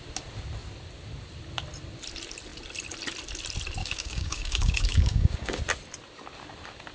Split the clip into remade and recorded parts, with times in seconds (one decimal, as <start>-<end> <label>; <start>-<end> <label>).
0.0-3.8 recorded; 3.8-5.6 remade; 5.6-6.9 recorded